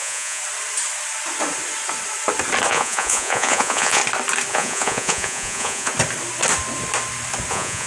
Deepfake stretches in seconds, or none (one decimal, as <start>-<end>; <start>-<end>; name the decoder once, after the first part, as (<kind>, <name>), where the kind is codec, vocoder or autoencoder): 0.0-0.4 (vocoder, Vocos); 2.7-4.0; 4.5-5.9; 7.5-7.9